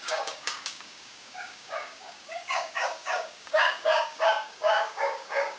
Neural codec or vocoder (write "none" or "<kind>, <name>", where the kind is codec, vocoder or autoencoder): codec, DAC